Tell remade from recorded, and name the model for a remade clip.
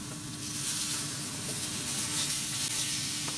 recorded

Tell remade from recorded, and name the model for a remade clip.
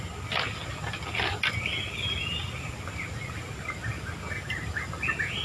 recorded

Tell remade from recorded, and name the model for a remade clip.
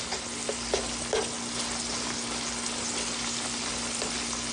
recorded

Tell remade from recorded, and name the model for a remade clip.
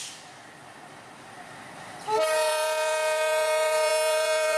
remade, vocoder, BigVGAN v2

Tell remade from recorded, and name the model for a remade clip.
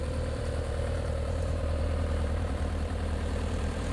remade, vocoder, BigVGAN v2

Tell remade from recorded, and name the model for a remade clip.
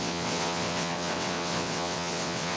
remade, vocoder, WaveNeXt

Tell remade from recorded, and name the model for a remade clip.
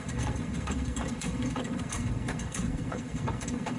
remade, codec, SNAC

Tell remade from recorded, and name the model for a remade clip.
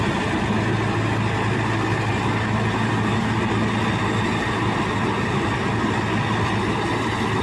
recorded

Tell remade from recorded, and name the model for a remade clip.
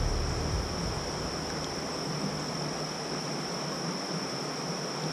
recorded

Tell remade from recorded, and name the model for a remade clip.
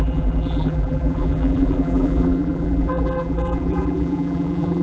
remade, vocoder, BigVGAN v2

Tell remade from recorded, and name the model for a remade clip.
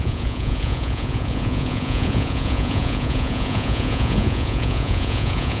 remade, vocoder, Vocos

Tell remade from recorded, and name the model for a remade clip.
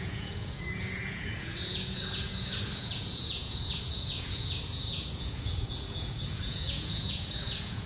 remade, vocoder, Vocos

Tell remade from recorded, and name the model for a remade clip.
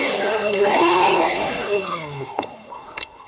remade, codec, SNAC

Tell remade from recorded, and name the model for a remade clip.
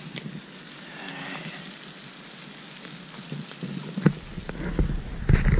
recorded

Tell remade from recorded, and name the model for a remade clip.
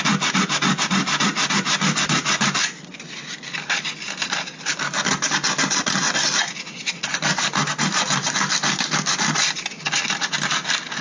recorded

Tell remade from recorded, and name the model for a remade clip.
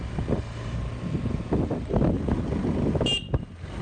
recorded